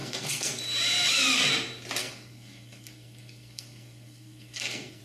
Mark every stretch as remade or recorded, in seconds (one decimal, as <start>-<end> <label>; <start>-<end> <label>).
0.0-0.6 remade; 0.6-2.0 recorded; 2.0-5.0 remade